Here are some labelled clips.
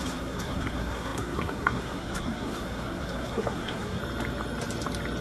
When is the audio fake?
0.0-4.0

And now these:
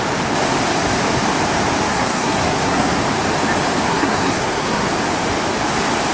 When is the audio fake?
1.9-3.0; 3.9-4.9

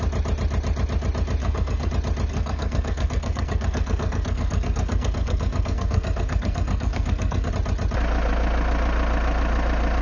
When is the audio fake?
1.4-1.9; 2.3-7.5

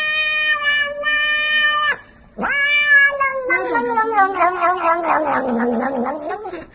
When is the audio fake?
none

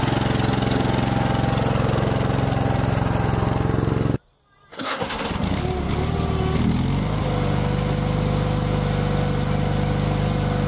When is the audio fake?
4.7-5.3

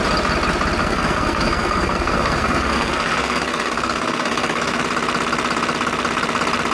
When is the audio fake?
0.8-4.8